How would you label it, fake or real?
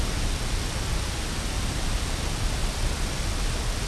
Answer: real